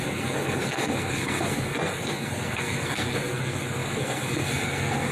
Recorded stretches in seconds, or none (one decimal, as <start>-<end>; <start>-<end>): none